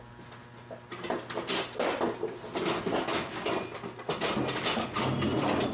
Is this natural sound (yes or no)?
yes